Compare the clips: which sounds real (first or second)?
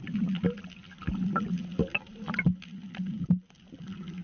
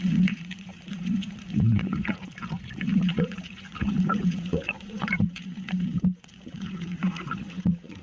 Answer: first